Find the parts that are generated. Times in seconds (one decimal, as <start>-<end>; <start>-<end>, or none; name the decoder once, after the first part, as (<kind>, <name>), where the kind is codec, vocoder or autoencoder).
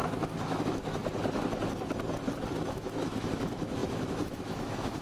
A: 0.0-1.0 (autoencoder, DAC-VAE); 2.7-5.0